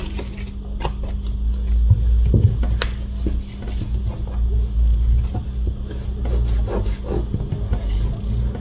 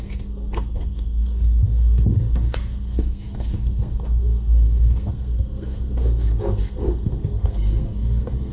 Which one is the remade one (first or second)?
second